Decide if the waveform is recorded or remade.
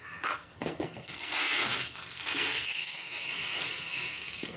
remade